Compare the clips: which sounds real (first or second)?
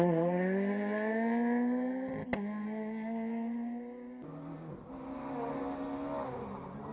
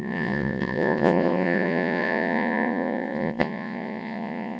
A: first